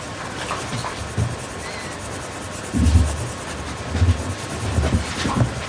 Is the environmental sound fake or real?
real